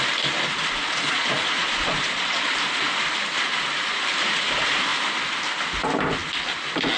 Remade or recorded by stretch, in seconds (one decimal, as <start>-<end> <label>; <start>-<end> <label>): 0.0-0.8 recorded; 0.8-2.5 remade; 2.5-7.0 recorded